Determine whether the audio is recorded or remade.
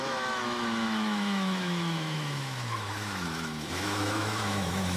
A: remade